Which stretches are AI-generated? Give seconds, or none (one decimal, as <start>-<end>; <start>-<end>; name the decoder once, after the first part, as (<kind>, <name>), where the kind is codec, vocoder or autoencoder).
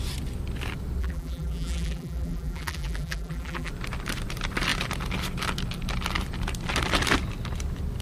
1.0-3.7 (vocoder, BigVGAN v2)